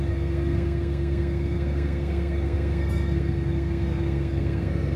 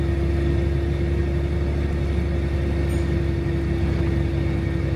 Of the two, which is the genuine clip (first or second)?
second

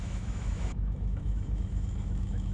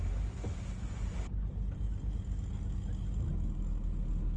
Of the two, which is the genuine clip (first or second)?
second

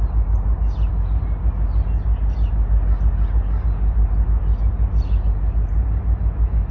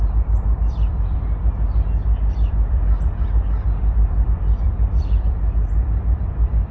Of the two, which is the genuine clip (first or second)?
first